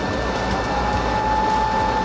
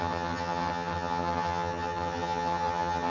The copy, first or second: second